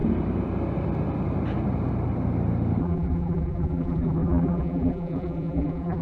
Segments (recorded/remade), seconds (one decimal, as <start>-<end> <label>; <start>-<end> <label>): 0.0-2.8 recorded; 2.8-6.0 remade